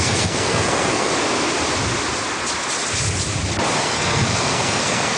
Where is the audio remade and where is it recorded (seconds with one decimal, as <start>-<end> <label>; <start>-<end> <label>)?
0.0-1.1 remade; 1.1-3.8 recorded; 3.8-5.2 remade